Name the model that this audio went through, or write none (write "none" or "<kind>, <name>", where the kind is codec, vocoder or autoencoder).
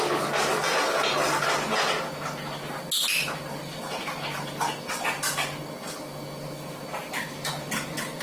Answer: none